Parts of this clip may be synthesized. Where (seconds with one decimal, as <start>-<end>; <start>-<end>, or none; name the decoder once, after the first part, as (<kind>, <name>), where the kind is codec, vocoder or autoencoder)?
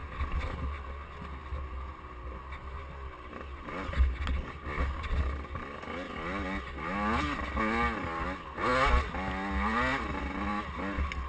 none